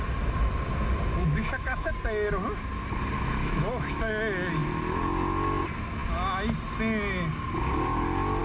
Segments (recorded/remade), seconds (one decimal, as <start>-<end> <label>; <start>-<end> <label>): 0.0-1.1 recorded; 1.1-1.9 remade; 1.9-3.4 recorded; 3.4-4.1 remade; 4.1-8.4 recorded